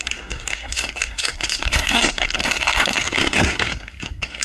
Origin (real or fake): fake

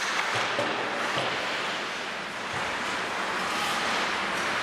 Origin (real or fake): real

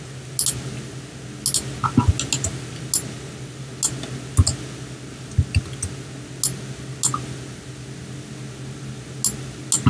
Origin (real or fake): real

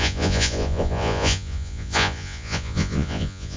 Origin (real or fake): fake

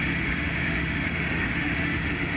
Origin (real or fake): fake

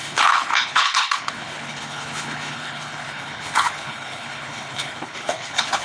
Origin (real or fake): fake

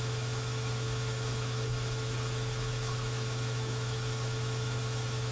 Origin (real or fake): fake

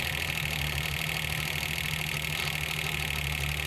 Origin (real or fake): real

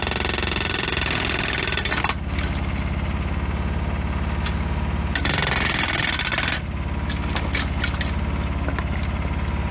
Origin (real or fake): real